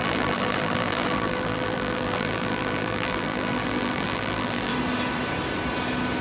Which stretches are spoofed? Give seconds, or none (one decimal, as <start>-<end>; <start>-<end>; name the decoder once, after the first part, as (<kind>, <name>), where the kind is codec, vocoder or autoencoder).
0.0-4.7 (vocoder, BigVGAN v2)